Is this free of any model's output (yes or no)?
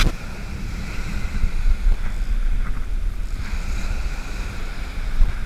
yes